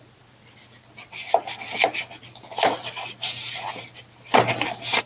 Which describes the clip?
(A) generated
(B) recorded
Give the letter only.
B